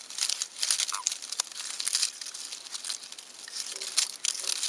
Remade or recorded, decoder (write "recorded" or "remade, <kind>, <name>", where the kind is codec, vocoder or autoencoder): recorded